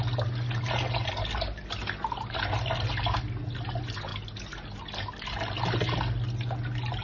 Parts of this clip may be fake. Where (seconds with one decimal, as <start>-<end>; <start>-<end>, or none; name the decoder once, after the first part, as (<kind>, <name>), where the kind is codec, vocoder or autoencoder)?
none